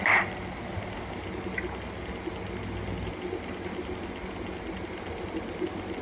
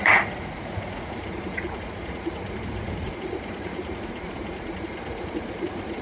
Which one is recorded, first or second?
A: first